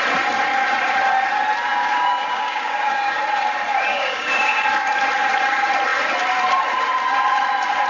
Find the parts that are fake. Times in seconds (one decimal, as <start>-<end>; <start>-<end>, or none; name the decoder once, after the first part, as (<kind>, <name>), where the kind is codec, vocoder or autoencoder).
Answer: 1.7-3.2 (codec, DAC); 3.9-4.6